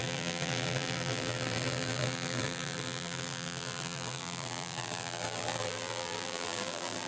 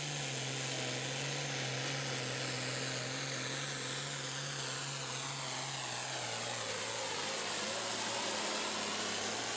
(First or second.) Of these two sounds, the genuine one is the second